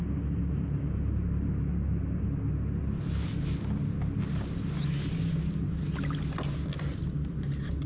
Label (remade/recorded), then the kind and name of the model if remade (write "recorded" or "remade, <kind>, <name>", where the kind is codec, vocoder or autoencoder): recorded